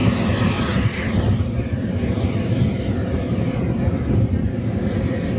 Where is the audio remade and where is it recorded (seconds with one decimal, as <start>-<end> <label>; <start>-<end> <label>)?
0.0-5.4 recorded